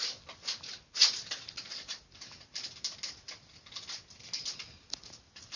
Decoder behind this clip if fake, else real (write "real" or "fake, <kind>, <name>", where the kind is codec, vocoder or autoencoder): real